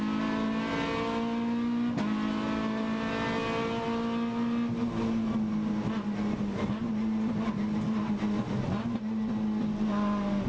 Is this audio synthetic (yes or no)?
no